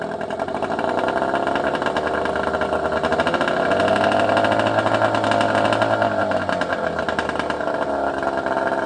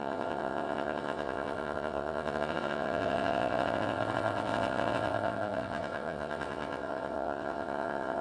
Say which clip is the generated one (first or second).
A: second